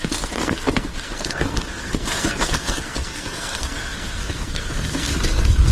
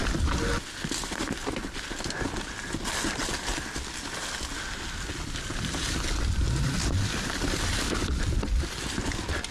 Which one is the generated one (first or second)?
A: first